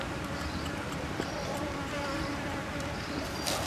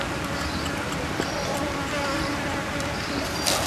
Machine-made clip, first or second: first